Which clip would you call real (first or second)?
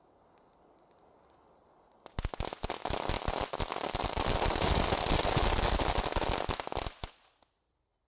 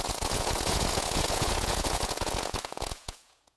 first